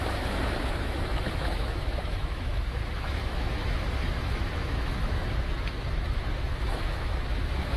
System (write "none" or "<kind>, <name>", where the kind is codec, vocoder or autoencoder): autoencoder, DAC-VAE